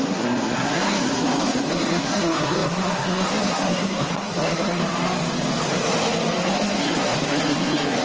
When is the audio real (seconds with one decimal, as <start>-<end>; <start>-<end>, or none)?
4.8-6.4